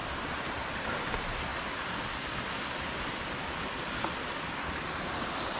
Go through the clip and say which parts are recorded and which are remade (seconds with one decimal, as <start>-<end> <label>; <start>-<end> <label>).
0.0-0.7 remade; 0.7-5.6 recorded